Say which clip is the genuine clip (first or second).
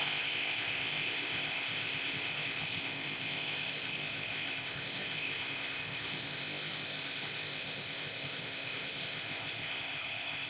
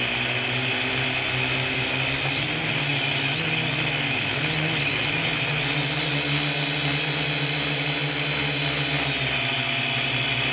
second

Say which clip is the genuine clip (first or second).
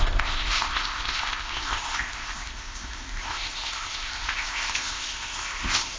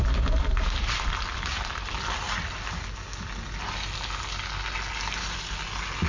second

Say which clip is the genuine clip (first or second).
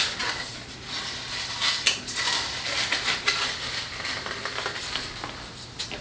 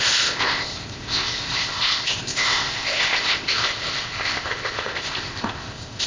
first